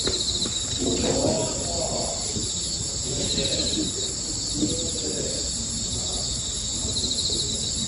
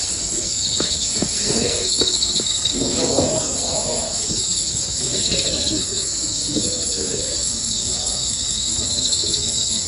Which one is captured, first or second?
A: first